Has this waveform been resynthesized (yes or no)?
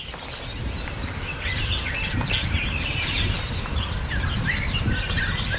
no